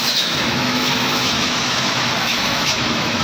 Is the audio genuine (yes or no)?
no